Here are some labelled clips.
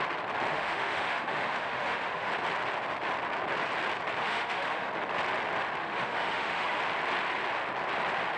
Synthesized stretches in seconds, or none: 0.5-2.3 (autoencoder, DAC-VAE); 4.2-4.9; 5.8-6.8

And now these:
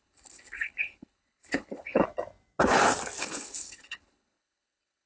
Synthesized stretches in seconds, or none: 0.0-2.0 (codec, HILCodec); 3.2-5.1

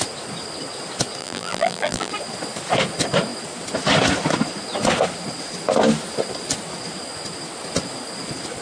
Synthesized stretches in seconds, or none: 1.2-2.1 (vocoder, BigVGAN v2)

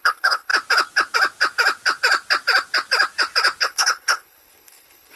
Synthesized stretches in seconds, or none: 0.0-0.5 (codec, HILCodec); 3.6-5.2